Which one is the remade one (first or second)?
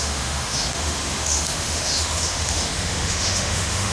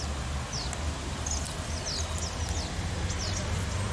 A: first